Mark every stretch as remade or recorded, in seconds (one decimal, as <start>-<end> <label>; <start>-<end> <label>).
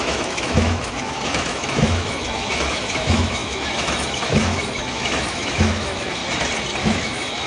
0.0-6.2 remade; 6.2-6.8 recorded; 6.8-7.5 remade